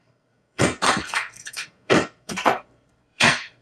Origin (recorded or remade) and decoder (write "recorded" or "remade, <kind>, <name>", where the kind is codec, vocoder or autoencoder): remade, codec, SNAC